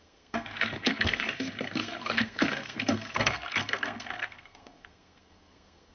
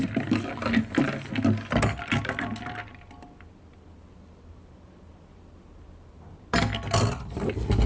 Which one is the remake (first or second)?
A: first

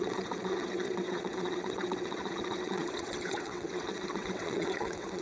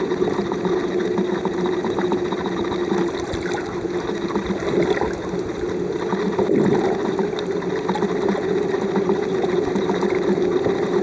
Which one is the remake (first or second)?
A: first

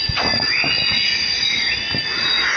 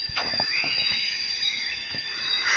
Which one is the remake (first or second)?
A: second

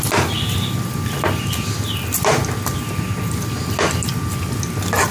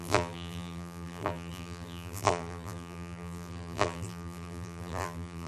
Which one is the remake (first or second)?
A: second